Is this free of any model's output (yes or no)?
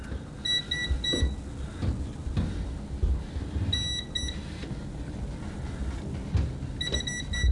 yes